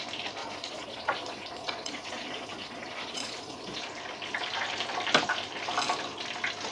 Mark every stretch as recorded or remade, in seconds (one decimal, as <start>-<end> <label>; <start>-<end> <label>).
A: 0.0-0.4 recorded; 0.4-3.8 remade; 3.8-6.7 recorded